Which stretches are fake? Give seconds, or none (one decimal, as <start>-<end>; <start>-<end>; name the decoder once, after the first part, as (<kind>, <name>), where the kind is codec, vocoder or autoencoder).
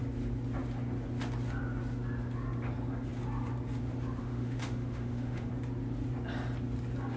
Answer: 4.2-5.5 (autoencoder, DAC-VAE)